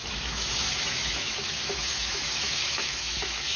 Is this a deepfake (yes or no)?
yes